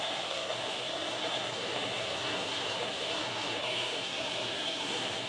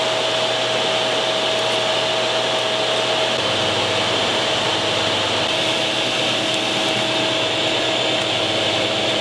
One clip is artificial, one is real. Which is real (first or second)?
second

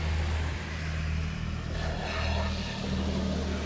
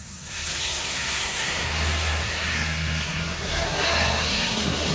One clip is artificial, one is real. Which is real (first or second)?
first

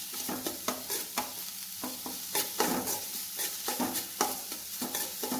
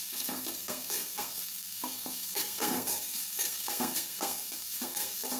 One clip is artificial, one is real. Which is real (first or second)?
first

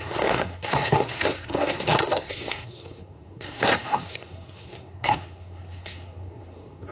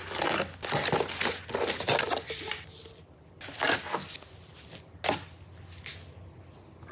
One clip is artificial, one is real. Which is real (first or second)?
second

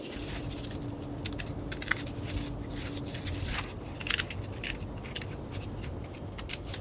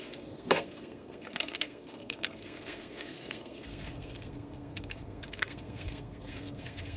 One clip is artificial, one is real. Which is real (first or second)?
first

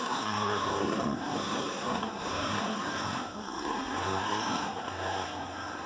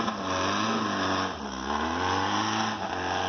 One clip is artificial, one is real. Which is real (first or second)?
second